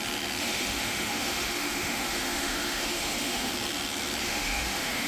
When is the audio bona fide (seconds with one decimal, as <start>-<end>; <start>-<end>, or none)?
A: 0.0-0.4; 3.5-4.2